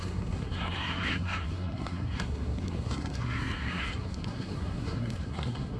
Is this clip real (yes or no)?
no